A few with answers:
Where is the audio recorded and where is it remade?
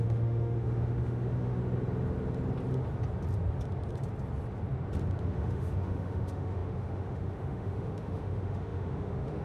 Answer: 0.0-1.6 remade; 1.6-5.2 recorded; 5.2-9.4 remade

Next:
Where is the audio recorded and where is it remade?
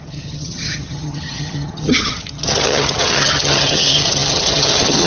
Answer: 0.0-5.1 remade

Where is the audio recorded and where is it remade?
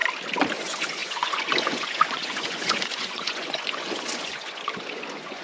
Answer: 0.0-0.6 recorded; 0.6-5.4 remade